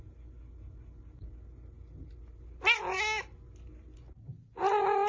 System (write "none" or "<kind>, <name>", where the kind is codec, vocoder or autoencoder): none